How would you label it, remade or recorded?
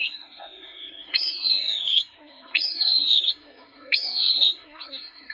remade